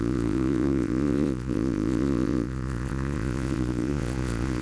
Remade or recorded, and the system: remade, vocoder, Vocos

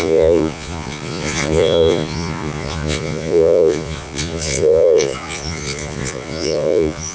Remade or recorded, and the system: remade, vocoder, Vocos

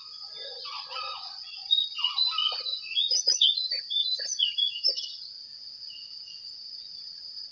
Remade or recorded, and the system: remade, vocoder, Vocos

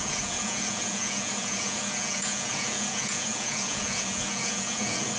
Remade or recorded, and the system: remade, vocoder, Vocos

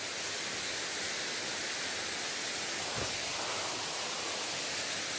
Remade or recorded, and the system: recorded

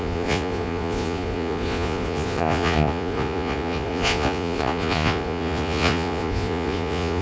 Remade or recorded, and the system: remade, vocoder, Vocos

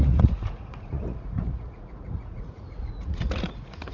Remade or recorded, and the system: remade, vocoder, Vocos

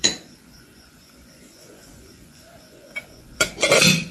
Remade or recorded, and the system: remade, vocoder, Vocos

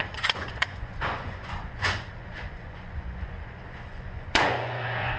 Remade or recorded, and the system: remade, vocoder, Vocos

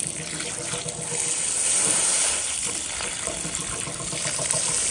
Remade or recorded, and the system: recorded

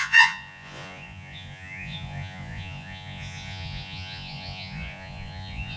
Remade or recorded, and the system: remade, vocoder, Vocos